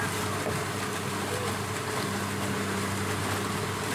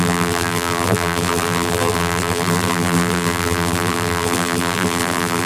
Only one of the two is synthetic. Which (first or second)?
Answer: second